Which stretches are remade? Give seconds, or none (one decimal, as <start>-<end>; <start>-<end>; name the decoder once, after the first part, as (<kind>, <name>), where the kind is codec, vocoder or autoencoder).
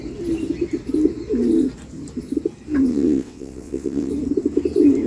2.9-4.1 (vocoder, WaveNeXt)